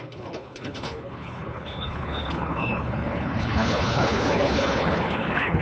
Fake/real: fake